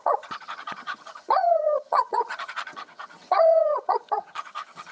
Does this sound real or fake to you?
fake